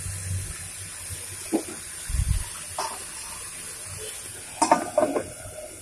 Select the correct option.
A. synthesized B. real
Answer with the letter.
B